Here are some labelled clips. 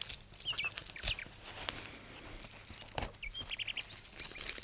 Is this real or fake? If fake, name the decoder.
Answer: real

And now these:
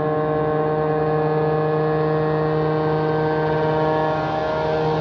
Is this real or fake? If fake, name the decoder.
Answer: real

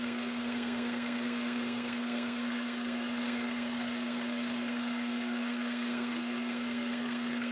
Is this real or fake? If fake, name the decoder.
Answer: fake, codec, SNAC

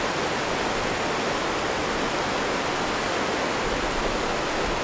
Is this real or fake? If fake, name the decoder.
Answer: real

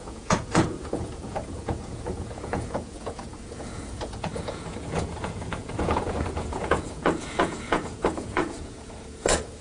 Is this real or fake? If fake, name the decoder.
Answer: fake, vocoder, Vocos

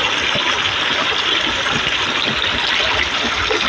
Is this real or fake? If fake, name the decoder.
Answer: real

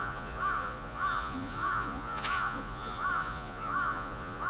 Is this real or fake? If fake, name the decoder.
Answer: fake, vocoder, Vocos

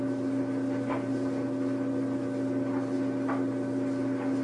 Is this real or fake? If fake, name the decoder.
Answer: real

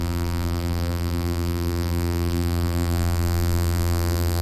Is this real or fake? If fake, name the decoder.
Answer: fake, vocoder, BigVGAN v2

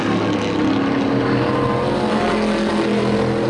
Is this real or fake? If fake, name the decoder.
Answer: real